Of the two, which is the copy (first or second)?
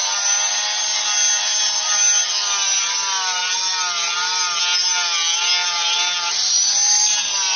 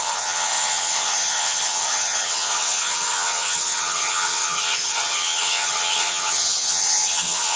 second